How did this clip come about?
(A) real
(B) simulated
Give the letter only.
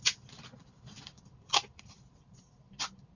A